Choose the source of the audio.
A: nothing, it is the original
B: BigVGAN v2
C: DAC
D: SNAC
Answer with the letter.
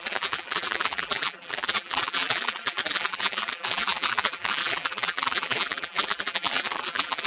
B